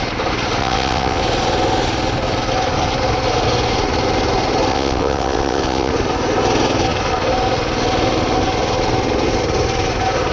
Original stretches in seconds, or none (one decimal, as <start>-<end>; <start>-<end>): 0.0-0.6; 1.2-4.7; 5.9-10.3